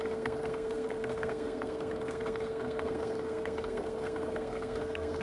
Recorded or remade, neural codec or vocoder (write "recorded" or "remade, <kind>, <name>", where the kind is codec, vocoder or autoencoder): remade, codec, SNAC